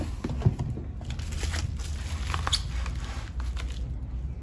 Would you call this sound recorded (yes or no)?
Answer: yes